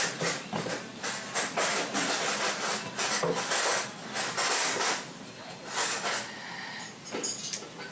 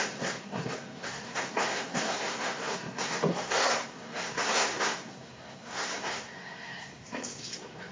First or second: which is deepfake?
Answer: second